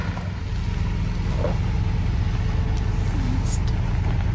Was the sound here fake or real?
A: real